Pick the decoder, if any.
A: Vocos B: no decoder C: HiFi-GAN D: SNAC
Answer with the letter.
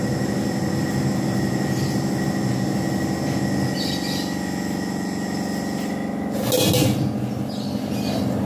B